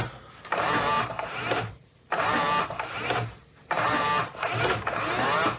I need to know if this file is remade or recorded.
remade